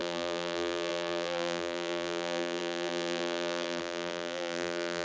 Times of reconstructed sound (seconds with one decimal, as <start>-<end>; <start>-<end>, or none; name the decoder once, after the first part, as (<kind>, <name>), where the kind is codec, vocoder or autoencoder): 0.0-5.0 (vocoder, BigVGAN v2)